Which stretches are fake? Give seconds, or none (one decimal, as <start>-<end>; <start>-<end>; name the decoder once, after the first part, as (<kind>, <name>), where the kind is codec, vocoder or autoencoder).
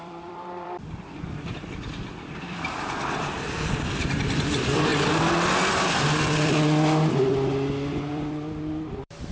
0.0-4.9 (vocoder, BigVGAN v2); 8.1-9.3